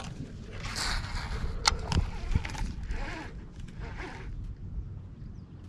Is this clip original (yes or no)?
yes